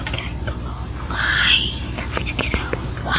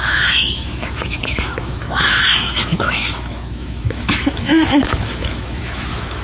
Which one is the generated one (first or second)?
second